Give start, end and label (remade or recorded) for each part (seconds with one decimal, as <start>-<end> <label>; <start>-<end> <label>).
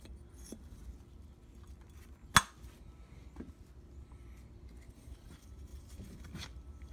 0.0-0.8 remade; 0.8-4.9 recorded; 4.9-6.9 remade